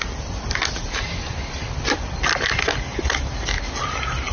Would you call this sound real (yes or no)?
yes